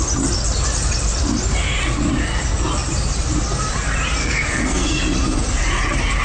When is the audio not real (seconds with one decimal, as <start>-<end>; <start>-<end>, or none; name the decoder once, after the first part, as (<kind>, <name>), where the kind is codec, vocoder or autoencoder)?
4.2-5.0 (codec, SNAC)